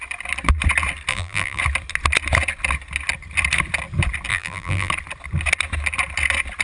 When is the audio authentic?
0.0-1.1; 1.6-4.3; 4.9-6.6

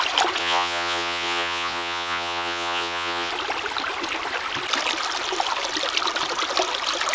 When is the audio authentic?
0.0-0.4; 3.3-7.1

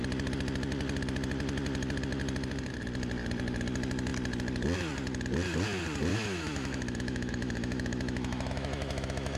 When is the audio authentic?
0.0-6.1